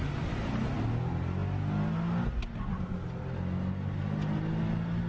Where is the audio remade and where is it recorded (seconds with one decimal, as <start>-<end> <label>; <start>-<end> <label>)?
0.0-5.1 recorded